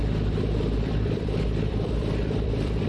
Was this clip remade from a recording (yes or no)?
yes